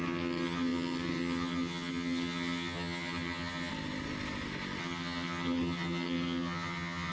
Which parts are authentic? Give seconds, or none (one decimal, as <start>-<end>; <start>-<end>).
3.7-4.8